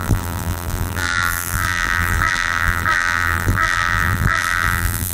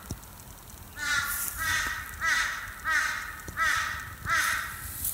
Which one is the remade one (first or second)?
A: first